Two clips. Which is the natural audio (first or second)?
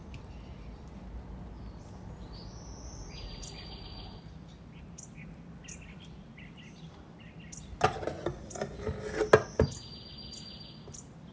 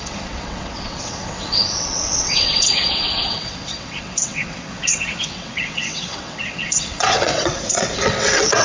first